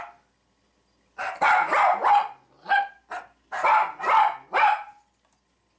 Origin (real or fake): real